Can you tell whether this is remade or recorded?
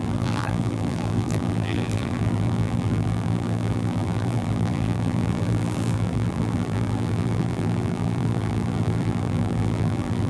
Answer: remade